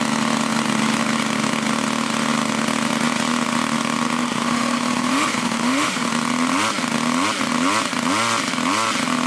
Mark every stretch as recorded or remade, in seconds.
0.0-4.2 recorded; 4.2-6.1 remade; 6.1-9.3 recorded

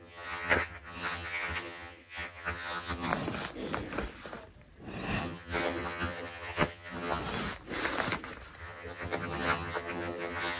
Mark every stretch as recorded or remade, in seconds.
0.0-3.1 remade; 3.1-5.2 recorded; 5.2-7.2 remade; 7.2-8.6 recorded; 8.6-10.6 remade

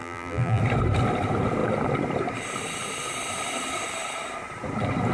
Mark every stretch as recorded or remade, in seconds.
0.0-0.6 remade; 0.6-5.1 recorded

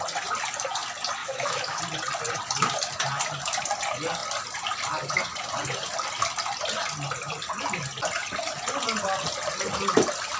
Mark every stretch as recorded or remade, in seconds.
0.0-1.2 recorded; 1.2-1.8 remade; 1.8-10.4 recorded